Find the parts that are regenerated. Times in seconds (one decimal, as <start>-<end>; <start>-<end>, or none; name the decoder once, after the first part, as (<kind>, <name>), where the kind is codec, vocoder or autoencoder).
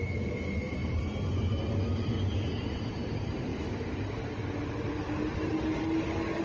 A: 0.0-3.5 (vocoder, BigVGAN v2)